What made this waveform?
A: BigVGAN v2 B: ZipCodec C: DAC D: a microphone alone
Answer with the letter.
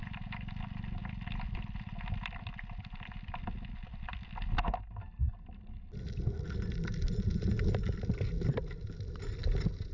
D